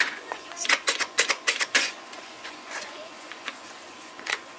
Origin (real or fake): fake